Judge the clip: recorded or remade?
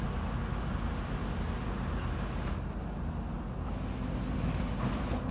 recorded